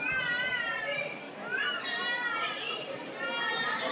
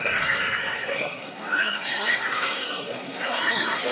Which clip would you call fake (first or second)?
second